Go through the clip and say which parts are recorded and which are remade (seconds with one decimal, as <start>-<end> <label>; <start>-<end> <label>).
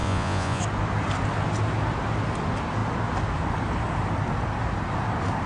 0.0-0.6 remade; 0.6-5.5 recorded